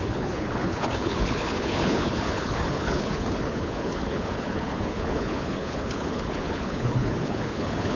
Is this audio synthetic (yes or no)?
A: yes